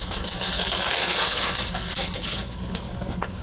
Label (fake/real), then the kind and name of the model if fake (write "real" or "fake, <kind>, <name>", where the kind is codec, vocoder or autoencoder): fake, codec, SNAC